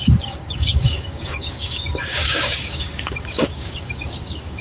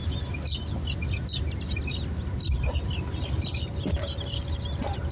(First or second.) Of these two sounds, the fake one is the first